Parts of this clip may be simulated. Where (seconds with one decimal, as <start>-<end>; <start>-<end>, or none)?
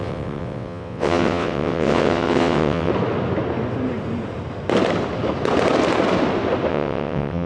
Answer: 0.0-2.9; 6.7-7.5